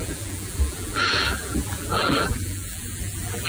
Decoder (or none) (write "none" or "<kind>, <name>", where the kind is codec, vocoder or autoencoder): vocoder, BigVGAN v2